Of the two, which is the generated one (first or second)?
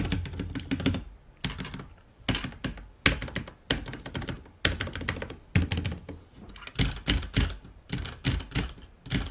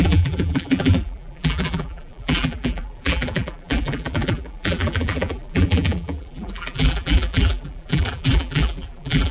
second